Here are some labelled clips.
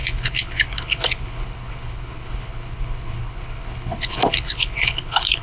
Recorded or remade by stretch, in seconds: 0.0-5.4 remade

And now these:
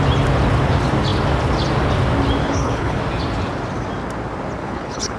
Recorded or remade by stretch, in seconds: 0.0-2.4 recorded; 2.4-3.0 remade; 3.0-4.6 recorded; 4.6-5.2 remade

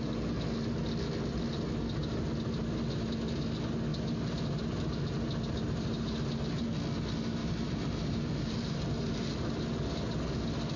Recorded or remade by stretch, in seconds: 0.0-7.4 recorded; 7.4-9.5 remade; 9.5-10.8 recorded

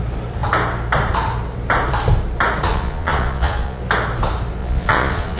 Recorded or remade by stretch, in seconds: 0.0-2.7 recorded; 2.7-3.8 remade; 3.8-4.6 recorded; 4.6-5.4 remade

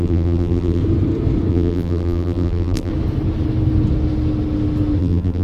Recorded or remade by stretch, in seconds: 0.0-0.8 remade; 0.8-1.5 recorded; 1.5-2.9 remade; 2.9-5.0 recorded; 5.0-5.4 remade